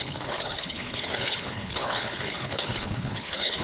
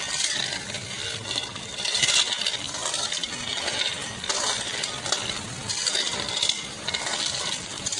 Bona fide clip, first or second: second